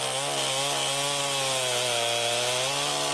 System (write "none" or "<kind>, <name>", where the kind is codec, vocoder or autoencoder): none